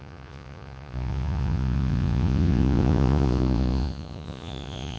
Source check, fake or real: fake